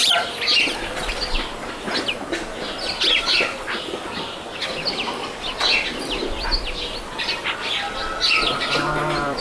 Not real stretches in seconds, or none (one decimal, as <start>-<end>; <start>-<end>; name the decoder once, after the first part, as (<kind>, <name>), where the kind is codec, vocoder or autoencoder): none

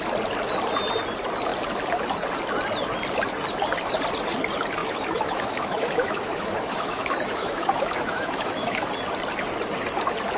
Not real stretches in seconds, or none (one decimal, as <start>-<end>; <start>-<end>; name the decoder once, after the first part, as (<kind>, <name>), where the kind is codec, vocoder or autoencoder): 4.8-8.9 (autoencoder, DAC-VAE)

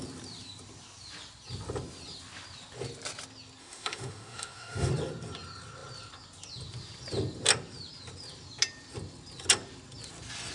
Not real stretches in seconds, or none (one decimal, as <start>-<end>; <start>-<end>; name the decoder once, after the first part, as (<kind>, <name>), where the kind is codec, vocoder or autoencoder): 3.6-4.9 (autoencoder, DAC-VAE)

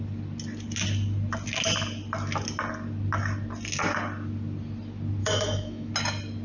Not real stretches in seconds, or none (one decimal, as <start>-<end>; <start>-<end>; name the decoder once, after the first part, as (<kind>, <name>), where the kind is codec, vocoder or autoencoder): 5.2-5.9 (autoencoder, DAC-VAE)

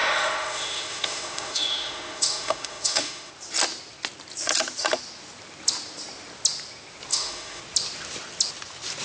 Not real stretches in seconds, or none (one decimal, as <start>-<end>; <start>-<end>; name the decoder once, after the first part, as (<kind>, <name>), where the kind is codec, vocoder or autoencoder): 0.0-3.3 (autoencoder, DAC-VAE); 7.1-7.6

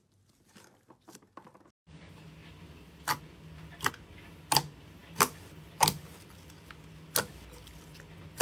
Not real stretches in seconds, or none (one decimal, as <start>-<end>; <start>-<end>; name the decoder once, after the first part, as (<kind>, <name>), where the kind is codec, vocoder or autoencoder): none

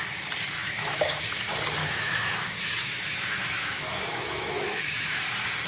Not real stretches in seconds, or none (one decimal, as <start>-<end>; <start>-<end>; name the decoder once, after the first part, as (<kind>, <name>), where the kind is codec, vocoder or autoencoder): 0.6-1.2 (autoencoder, DAC-VAE); 1.8-5.2

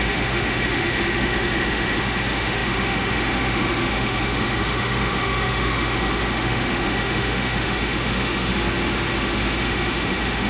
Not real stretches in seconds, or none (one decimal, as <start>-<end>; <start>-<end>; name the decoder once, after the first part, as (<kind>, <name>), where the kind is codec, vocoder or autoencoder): 0.0-8.5 (autoencoder, DAC-VAE); 9.2-10.5